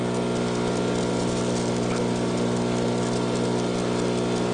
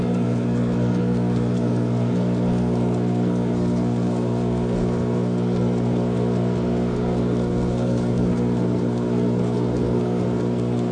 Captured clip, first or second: first